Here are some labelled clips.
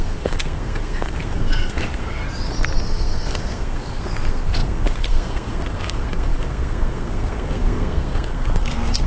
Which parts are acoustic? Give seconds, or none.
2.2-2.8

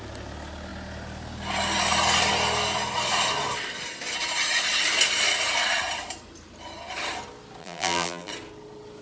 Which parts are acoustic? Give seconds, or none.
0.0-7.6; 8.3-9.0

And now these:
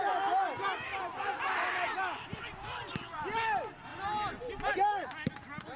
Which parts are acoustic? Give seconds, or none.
0.0-0.9; 1.4-5.8

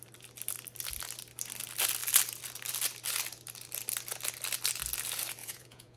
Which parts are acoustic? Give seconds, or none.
0.0-5.4

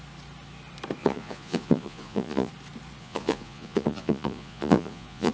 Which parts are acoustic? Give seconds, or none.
0.0-1.0; 2.5-3.0

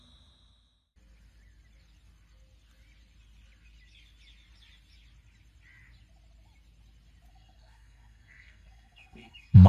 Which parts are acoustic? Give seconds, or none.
0.0-7.3

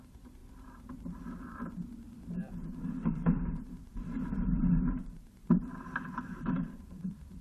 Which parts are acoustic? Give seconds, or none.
none

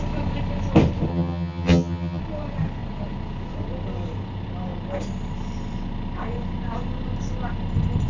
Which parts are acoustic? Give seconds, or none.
0.0-1.1; 2.2-8.1